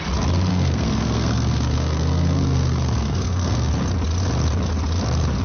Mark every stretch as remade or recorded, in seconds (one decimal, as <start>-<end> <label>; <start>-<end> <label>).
0.0-0.5 recorded; 0.5-3.7 remade; 3.7-5.4 recorded